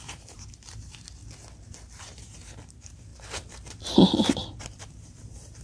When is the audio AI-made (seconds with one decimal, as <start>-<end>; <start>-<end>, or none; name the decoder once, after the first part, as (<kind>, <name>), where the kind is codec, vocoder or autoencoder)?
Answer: 0.0-1.2 (vocoder, BigVGAN v2); 2.0-3.1; 4.8-5.6